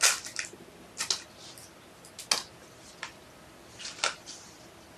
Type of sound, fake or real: real